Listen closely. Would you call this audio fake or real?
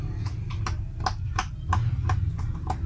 real